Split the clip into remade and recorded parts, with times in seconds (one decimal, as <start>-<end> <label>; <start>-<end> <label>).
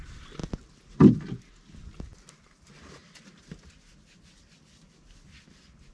0.0-5.9 recorded